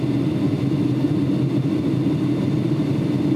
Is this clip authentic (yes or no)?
yes